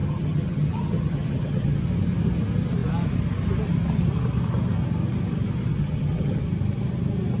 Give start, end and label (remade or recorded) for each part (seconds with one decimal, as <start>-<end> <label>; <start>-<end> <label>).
0.0-1.8 remade; 1.8-5.7 recorded; 5.7-6.4 remade; 6.4-7.4 recorded